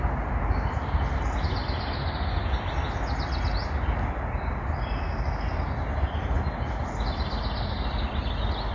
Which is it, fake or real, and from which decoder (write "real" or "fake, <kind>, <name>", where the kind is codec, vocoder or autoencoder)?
real